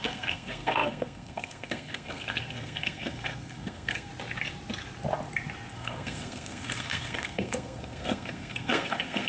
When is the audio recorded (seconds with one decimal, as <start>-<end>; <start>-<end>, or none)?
4.1-5.7